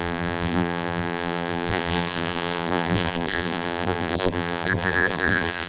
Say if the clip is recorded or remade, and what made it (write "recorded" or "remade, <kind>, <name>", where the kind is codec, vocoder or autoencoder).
remade, vocoder, BigVGAN v2